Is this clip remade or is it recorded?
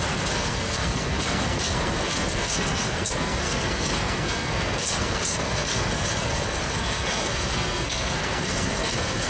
remade